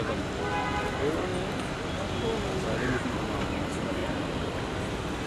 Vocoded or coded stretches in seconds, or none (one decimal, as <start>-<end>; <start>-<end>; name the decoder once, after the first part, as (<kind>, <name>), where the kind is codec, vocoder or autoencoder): none